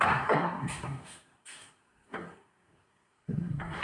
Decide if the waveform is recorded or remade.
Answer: remade